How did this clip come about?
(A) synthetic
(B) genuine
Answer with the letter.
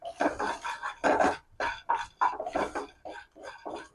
B